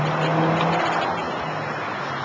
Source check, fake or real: real